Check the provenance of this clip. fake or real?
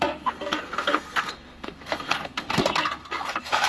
fake